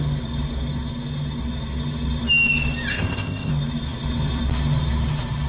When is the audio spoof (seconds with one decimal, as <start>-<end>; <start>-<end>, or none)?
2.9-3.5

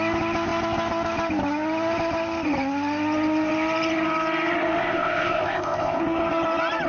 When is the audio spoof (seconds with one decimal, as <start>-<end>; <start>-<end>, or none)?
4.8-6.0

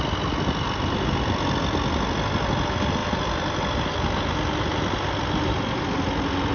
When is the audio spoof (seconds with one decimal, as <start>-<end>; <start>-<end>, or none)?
none

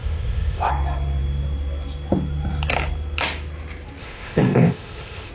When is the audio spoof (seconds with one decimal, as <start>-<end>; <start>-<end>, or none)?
0.0-0.7; 4.0-5.3